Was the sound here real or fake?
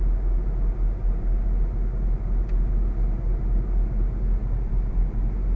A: real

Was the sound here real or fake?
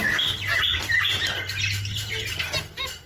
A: real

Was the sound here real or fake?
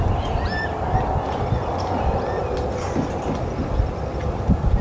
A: real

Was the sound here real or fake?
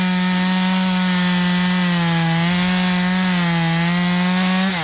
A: real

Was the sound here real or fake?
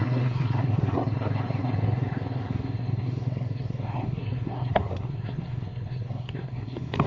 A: fake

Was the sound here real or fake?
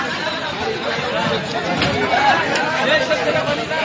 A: real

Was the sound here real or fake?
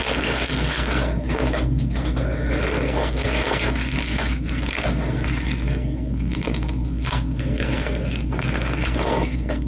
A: fake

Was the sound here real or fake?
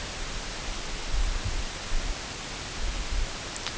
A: real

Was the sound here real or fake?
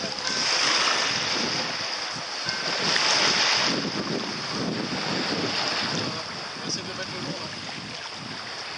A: real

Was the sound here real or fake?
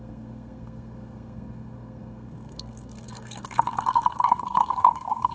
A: fake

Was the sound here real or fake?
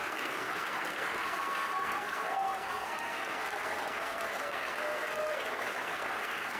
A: fake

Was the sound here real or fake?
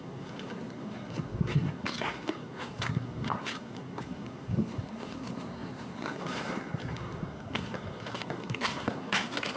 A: fake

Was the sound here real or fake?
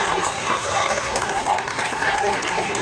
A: fake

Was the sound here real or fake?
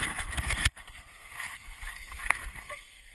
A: fake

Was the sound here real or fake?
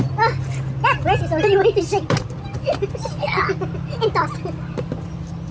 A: real